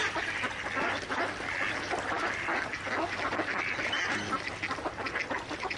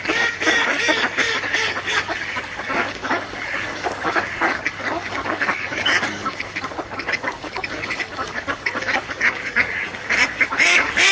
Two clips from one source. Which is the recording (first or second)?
first